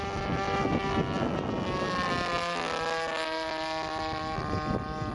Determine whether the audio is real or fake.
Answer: real